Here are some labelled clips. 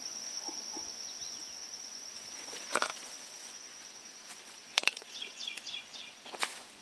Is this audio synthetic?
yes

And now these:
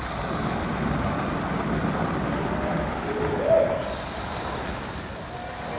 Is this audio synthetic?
no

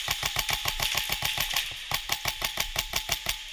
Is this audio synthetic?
no